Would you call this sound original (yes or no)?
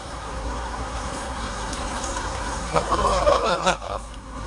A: no